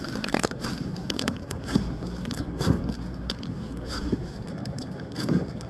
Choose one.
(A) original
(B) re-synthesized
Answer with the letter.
B